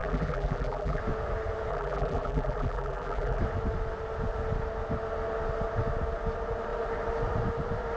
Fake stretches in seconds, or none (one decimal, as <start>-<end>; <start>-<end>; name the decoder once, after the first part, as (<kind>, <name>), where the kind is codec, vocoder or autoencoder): 0.0-1.0 (vocoder, BigVGAN v2); 1.7-3.4